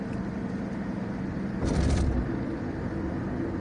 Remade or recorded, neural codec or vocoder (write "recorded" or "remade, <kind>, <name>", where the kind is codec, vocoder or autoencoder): recorded